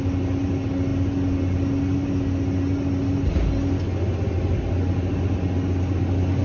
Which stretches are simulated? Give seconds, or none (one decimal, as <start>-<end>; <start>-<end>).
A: none